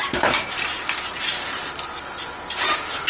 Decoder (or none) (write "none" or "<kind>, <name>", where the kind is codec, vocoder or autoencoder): none